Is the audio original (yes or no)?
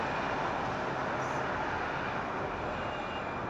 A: yes